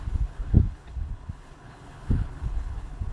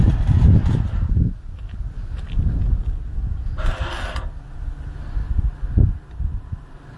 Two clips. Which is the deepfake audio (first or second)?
first